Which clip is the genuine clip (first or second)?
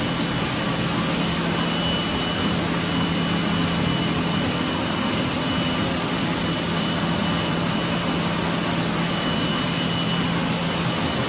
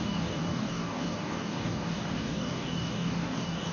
first